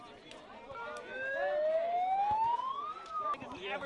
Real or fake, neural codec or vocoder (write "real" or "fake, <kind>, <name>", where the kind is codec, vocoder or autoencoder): real